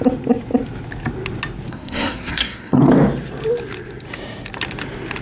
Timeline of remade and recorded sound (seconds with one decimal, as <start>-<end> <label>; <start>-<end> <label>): 0.0-1.7 recorded; 1.7-2.8 remade; 2.8-5.2 recorded